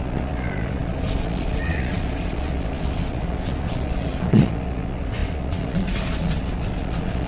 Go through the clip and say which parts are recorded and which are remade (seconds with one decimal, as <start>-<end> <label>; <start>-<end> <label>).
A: 0.0-7.3 remade